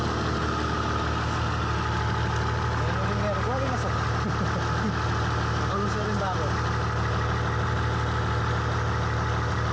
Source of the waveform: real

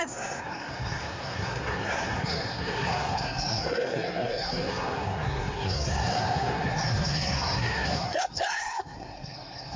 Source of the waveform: fake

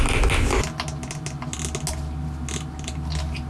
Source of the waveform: real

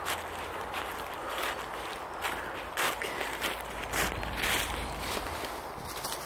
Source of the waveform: fake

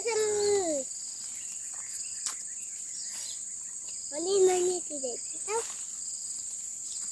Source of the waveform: real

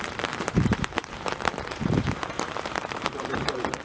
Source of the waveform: fake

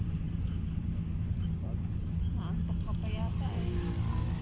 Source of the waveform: real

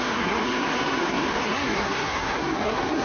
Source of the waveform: fake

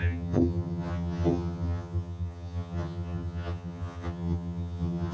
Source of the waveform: fake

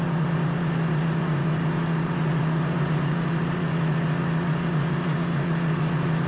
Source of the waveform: fake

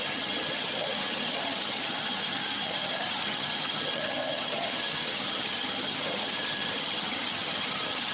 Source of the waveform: fake